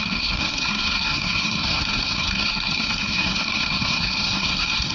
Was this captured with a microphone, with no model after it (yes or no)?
no